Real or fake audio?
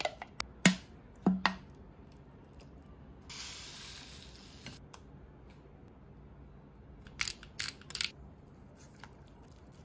real